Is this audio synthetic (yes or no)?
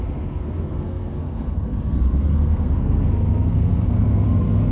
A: yes